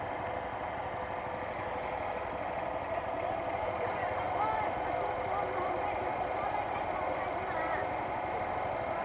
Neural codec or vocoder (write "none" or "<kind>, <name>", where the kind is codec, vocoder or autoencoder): none